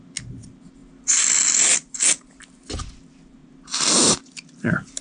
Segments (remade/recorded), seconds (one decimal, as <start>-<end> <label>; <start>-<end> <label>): 0.0-5.0 recorded